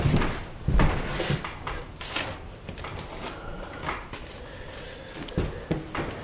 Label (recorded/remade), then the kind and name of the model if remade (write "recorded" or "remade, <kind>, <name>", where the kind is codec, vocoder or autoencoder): recorded